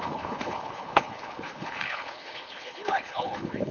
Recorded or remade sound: remade